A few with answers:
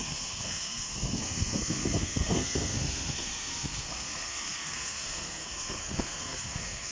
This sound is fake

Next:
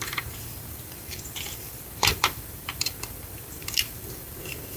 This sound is fake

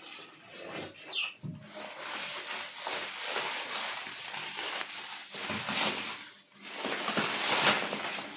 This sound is real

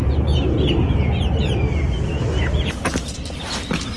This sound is real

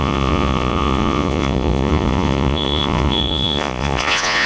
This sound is fake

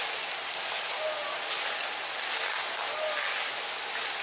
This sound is real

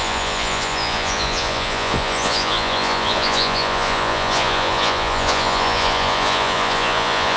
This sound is fake